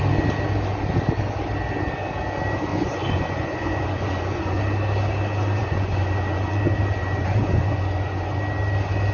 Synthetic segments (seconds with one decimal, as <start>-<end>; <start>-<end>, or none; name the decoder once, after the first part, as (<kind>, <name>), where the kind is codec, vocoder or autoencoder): 2.7-4.6 (vocoder, Vocos); 5.6-6.6; 7.0-8.4